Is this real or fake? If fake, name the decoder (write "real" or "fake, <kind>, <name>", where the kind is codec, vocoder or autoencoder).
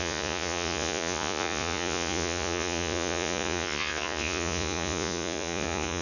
fake, vocoder, Vocos